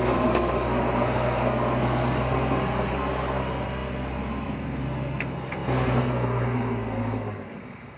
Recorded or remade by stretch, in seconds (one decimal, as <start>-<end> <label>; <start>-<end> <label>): 0.0-8.0 remade